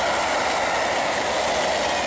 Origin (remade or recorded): recorded